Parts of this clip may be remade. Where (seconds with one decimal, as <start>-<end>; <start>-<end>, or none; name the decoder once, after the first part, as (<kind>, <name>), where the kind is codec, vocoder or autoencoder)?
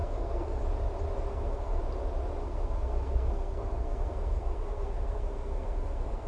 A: 0.0-0.6 (codec, SNAC); 1.3-1.8; 2.4-6.3